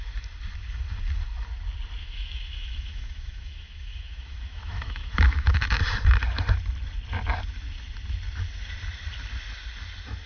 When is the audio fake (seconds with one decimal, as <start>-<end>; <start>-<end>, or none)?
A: 2.0-5.8